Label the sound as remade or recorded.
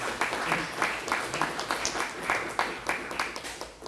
recorded